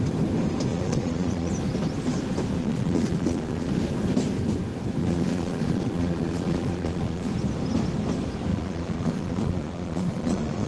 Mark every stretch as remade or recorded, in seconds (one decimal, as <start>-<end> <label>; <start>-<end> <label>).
0.0-0.7 recorded; 0.7-1.5 remade; 1.5-2.6 recorded; 2.6-3.7 remade; 3.7-5.0 recorded; 5.0-7.3 remade; 7.3-8.5 recorded; 8.5-10.7 remade